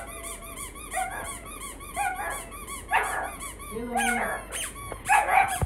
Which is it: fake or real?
fake